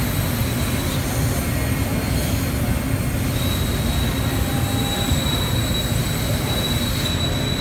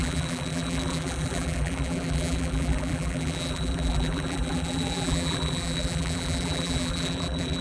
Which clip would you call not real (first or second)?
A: second